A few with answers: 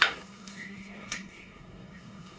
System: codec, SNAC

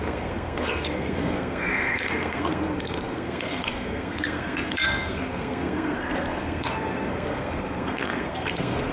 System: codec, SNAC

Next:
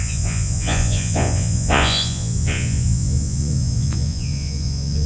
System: vocoder, Vocos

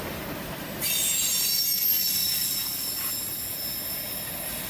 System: none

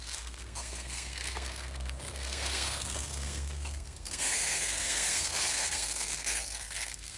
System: codec, SNAC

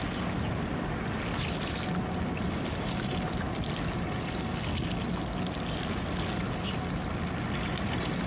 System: none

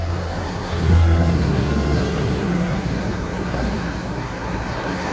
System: codec, SNAC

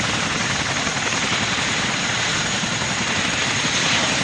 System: none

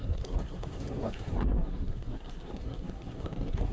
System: codec, SNAC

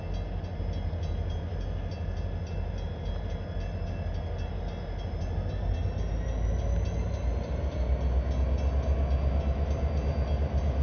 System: none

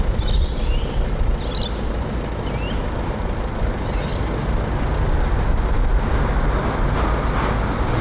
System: none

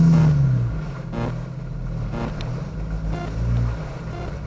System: none